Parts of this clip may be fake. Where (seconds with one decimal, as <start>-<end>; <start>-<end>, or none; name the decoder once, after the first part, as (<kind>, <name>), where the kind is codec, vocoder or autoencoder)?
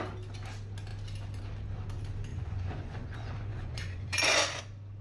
2.3-4.6 (vocoder, Vocos)